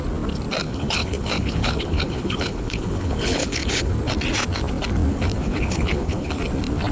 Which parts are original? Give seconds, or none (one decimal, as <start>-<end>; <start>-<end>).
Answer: 0.0-0.6; 3.9-5.1; 6.4-6.9